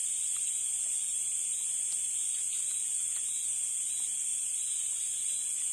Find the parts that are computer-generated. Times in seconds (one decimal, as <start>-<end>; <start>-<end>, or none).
none